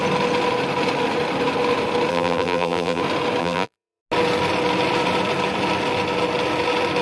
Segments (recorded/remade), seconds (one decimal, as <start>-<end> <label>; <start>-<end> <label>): 0.0-2.1 recorded; 2.1-3.0 remade; 3.0-3.4 recorded; 3.4-4.0 remade; 4.0-7.0 recorded